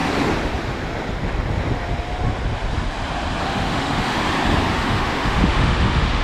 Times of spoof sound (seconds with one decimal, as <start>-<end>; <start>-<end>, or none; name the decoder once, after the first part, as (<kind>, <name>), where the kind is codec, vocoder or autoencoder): 3.4-4.2 (autoencoder, DAC-VAE); 4.7-6.2